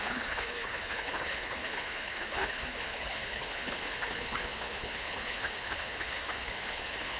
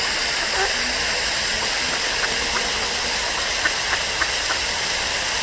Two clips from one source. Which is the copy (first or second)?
first